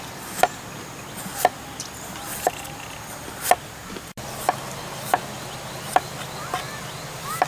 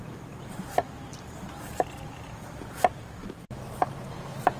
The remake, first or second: second